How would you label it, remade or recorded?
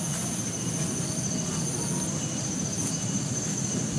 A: recorded